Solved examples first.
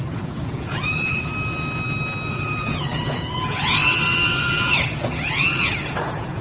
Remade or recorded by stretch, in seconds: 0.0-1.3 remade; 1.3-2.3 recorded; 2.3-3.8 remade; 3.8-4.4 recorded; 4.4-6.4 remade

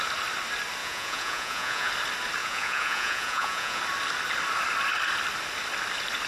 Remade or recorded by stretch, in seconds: 0.0-0.8 recorded; 0.8-1.9 remade; 1.9-2.4 recorded; 2.4-3.8 remade; 3.8-6.3 recorded

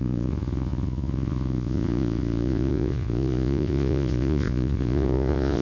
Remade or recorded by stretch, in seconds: 0.0-5.6 remade

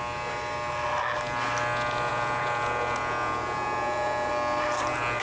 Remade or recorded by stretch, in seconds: 0.0-2.1 recorded; 2.1-4.3 remade; 4.3-5.2 recorded

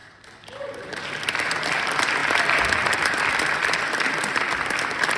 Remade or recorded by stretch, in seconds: 0.0-5.2 recorded

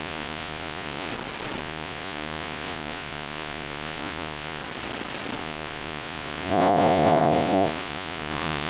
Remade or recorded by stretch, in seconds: 0.0-1.1 remade; 1.1-1.6 recorded; 1.6-4.6 remade; 4.6-5.4 recorded; 5.4-8.7 remade